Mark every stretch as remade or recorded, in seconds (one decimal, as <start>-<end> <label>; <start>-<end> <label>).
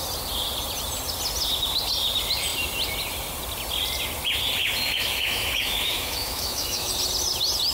0.0-4.6 recorded; 4.6-6.9 remade; 6.9-7.7 recorded